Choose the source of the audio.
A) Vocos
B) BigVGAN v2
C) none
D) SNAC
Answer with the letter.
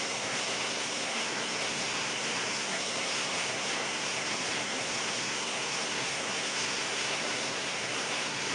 D